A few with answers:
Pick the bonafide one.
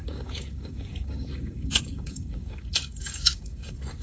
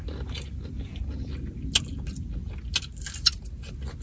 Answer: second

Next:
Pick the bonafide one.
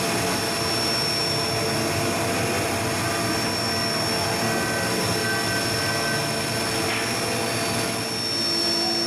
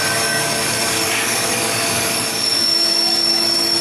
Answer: first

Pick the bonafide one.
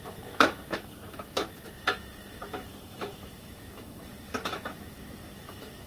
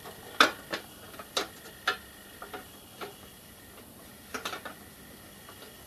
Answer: second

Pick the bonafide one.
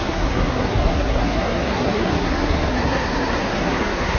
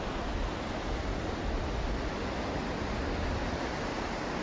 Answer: second